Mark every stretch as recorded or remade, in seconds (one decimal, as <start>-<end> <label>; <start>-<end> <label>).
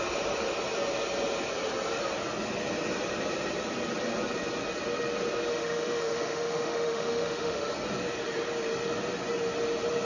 0.0-5.5 recorded; 5.5-7.7 remade; 7.7-10.0 recorded